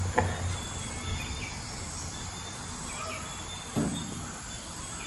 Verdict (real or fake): real